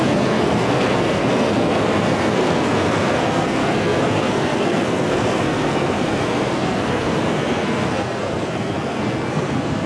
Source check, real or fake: fake